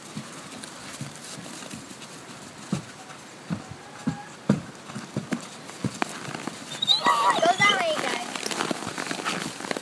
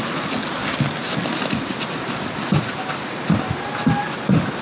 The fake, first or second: first